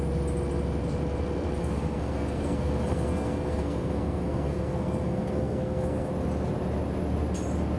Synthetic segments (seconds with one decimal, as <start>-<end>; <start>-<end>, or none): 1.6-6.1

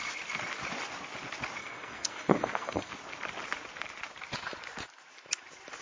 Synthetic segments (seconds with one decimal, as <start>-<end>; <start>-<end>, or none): 1.6-2.9

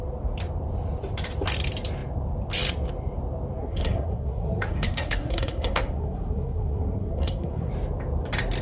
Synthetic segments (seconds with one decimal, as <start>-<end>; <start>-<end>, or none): 3.6-7.7